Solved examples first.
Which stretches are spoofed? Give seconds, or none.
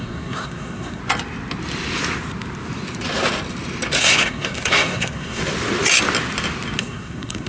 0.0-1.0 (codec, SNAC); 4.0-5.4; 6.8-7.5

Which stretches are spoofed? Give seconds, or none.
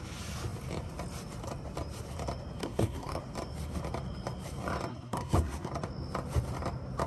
2.6-3.2 (codec, SNAC); 4.9-5.7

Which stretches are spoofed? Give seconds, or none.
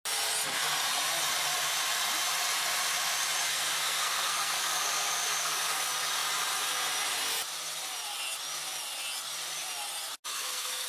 3.5-5.8 (codec, SNAC); 10.3-10.9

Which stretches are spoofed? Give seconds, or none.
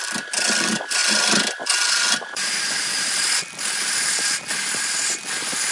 none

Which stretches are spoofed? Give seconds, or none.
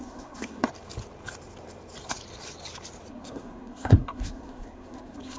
0.0-0.6 (codec, SNAC); 3.1-5.4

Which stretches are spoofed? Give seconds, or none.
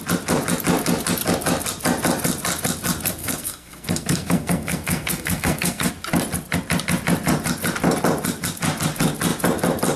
3.2-5.9 (codec, SNAC)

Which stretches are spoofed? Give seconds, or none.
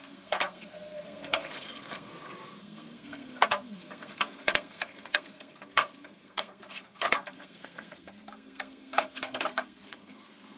0.0-2.1 (codec, SNAC); 2.6-10.6